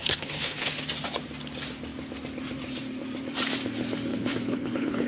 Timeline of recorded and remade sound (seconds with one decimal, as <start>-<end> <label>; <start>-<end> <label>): 0.0-0.8 remade; 0.8-4.1 recorded; 4.1-5.1 remade